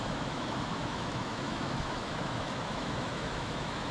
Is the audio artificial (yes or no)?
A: yes